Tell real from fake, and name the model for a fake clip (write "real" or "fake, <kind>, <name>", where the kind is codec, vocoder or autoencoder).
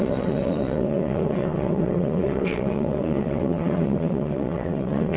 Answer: fake, vocoder, WaveNeXt